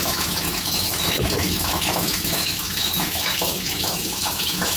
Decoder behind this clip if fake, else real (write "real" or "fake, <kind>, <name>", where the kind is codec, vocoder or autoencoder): fake, autoencoder, DAC-VAE